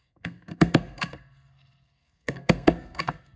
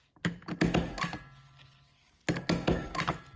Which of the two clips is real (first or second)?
second